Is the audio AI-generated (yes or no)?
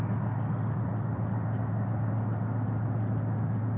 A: no